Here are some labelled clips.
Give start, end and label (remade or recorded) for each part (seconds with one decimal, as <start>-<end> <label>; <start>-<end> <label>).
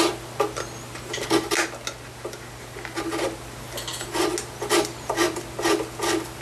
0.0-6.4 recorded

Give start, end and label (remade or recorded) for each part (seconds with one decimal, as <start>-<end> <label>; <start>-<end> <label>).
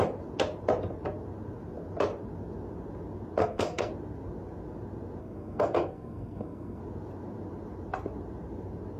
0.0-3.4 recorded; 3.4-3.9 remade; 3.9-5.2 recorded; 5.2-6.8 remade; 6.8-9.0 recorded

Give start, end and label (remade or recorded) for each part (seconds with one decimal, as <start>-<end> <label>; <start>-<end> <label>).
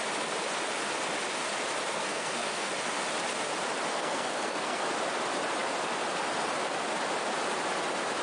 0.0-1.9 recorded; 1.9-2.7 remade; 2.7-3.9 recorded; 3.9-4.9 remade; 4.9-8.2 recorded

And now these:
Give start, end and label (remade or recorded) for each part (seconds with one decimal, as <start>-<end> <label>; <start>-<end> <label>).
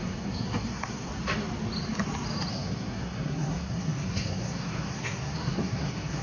0.0-1.1 remade; 1.1-2.5 recorded; 2.5-6.2 remade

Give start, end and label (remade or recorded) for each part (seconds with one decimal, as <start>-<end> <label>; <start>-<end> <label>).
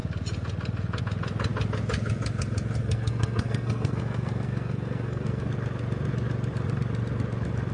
0.0-2.8 recorded; 2.8-5.5 remade; 5.5-7.7 recorded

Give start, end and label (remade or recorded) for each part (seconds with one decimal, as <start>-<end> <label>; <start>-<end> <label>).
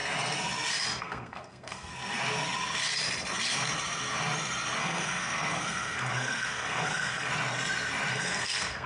0.0-1.0 recorded; 1.0-1.9 remade; 1.9-4.8 recorded; 4.8-7.3 remade; 7.3-8.1 recorded; 8.1-8.9 remade